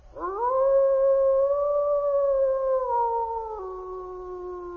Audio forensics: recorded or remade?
recorded